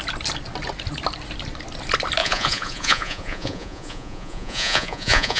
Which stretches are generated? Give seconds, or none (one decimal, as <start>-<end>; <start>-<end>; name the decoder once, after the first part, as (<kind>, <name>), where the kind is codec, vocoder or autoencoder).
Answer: 2.2-5.4 (vocoder, Vocos)